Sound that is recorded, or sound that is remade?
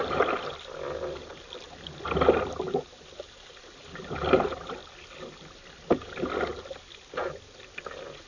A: recorded